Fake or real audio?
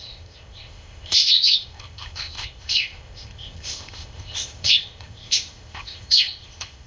fake